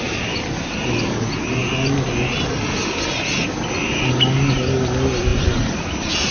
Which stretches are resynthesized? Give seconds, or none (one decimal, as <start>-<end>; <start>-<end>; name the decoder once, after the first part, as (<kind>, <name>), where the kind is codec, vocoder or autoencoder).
5.3-5.8 (vocoder, BigVGAN v2)